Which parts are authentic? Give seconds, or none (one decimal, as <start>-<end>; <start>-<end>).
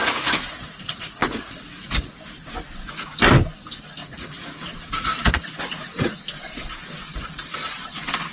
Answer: 2.1-4.0; 5.4-8.3